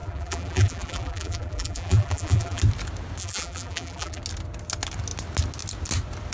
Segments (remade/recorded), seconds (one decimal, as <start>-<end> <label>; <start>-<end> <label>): 0.0-2.6 remade; 2.6-3.2 recorded; 3.2-4.2 remade; 4.2-6.3 recorded